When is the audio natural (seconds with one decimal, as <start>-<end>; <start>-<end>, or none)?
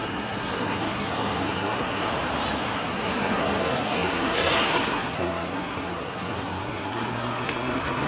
2.1-2.6